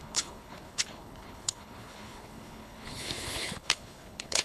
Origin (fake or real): fake